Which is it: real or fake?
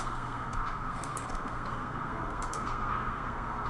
fake